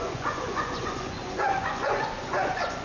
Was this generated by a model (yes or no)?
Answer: yes